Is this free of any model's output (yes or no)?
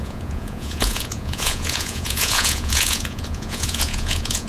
no